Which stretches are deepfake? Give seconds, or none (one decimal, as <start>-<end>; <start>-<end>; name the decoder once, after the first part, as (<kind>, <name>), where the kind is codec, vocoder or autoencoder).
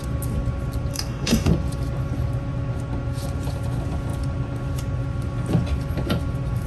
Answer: 0.9-1.5 (codec, DAC)